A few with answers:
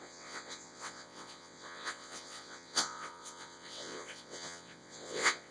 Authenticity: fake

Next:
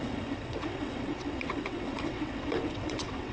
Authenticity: fake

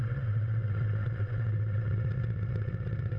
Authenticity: fake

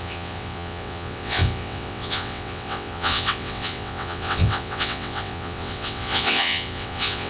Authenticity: fake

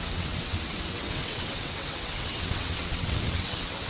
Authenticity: fake